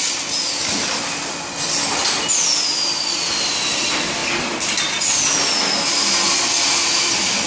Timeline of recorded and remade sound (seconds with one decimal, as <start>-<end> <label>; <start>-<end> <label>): 0.0-7.5 recorded